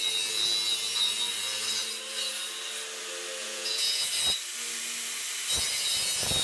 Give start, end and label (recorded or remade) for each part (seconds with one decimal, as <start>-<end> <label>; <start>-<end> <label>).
0.0-3.4 recorded; 3.4-4.1 remade; 4.1-6.4 recorded